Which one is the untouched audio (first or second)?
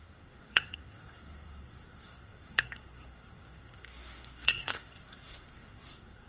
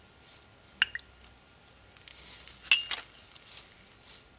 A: second